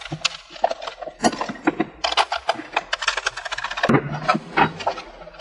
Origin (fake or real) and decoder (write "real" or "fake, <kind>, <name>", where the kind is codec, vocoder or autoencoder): real